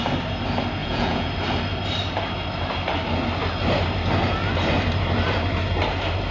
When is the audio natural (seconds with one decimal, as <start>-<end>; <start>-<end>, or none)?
0.0-0.8; 1.3-6.3